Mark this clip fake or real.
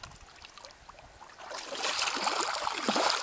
real